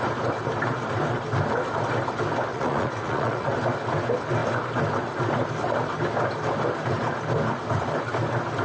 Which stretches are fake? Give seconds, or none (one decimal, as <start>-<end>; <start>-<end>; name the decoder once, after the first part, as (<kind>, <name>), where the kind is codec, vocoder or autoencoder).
2.5-3.5 (vocoder, Vocos)